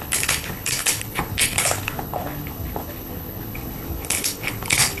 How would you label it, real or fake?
fake